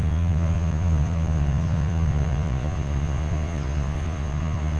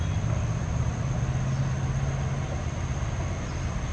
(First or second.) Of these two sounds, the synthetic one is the first